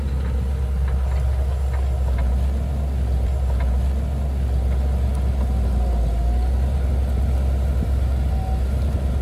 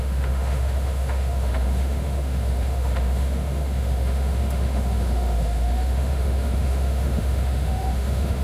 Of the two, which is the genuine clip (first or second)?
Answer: first